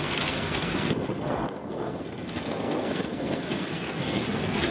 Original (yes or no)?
no